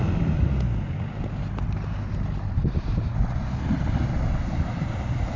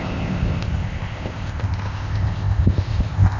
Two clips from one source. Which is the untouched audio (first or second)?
first